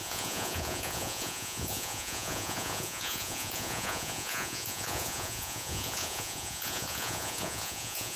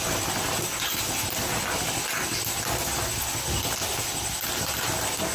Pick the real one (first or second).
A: second